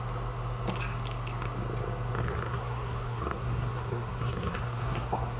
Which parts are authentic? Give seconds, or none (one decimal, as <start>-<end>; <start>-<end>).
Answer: 0.0-2.2